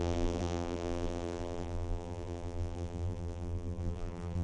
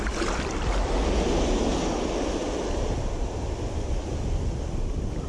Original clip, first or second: second